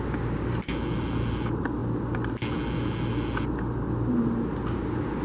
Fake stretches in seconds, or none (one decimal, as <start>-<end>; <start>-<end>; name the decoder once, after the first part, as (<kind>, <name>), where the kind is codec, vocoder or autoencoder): none